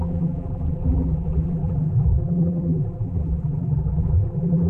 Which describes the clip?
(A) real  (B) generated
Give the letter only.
B